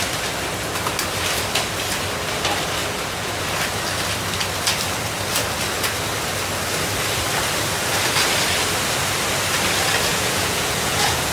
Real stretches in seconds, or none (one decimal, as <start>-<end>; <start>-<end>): 0.0-2.8; 3.4-10.1